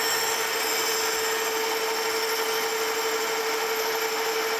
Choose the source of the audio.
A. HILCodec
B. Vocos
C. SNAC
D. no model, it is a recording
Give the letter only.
D